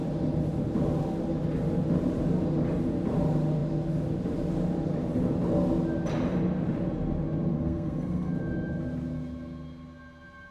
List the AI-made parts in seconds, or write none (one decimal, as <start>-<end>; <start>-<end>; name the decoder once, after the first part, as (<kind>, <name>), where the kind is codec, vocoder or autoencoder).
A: 7.5-8.3 (codec, SNAC)